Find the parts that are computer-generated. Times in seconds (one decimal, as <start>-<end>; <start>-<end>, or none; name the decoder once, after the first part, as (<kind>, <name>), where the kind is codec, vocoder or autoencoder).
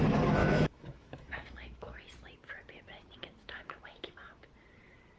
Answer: 0.4-2.1 (autoencoder, DAC-VAE); 3.4-4.5